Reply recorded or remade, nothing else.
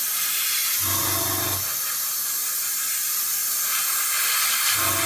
recorded